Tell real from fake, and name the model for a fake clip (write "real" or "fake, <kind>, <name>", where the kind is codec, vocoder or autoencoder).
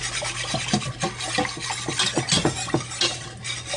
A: real